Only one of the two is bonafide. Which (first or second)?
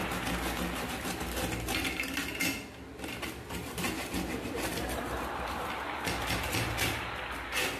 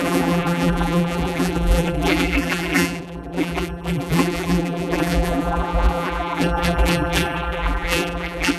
first